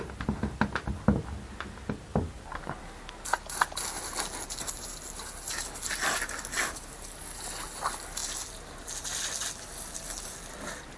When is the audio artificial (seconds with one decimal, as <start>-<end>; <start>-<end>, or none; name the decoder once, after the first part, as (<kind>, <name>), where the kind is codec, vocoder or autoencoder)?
none